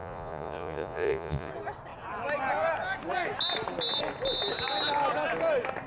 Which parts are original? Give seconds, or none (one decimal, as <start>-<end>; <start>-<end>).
1.5-5.9